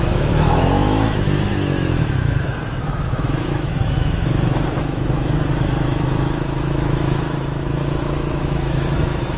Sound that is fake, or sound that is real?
fake